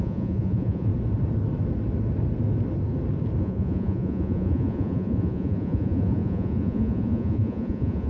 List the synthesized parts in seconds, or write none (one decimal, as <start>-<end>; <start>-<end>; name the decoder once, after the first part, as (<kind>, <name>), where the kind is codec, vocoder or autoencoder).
0.0-0.9 (vocoder, Vocos); 3.4-8.1